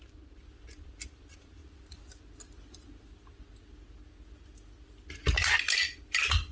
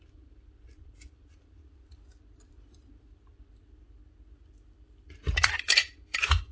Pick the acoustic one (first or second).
first